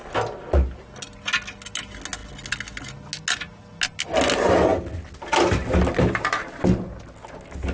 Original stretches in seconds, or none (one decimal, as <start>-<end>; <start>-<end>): 0.0-7.7